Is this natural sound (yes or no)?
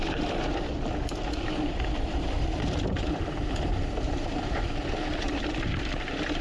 no